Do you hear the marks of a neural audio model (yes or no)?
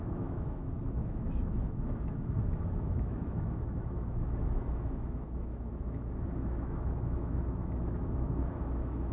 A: yes